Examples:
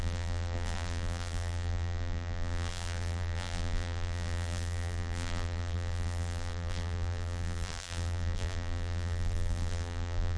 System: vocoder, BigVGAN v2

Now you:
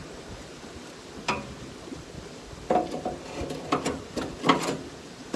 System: vocoder, BigVGAN v2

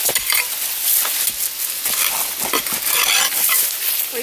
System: none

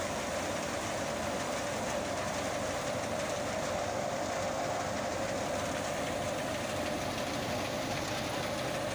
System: vocoder, BigVGAN v2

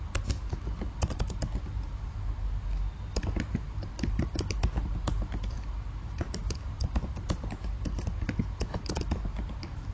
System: none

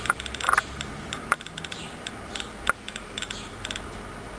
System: vocoder, BigVGAN v2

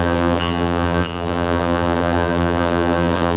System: vocoder, BigVGAN v2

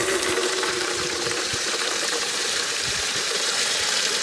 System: vocoder, BigVGAN v2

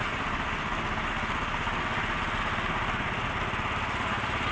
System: none